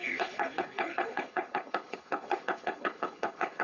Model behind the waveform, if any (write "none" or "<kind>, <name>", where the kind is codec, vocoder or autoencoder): codec, HILCodec